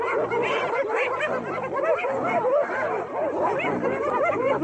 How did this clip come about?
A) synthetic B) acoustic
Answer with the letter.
B